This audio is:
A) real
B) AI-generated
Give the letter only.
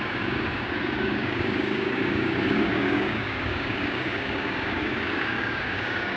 B